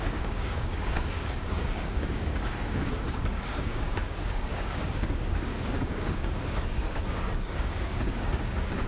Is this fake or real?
fake